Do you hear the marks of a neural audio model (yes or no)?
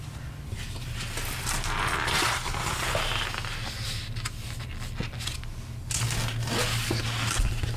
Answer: no